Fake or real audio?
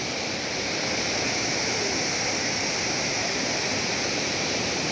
real